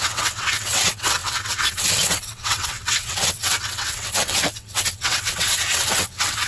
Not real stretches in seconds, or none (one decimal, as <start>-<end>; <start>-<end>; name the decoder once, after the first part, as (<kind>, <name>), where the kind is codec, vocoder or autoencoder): 0.0-6.5 (vocoder, WaveNeXt)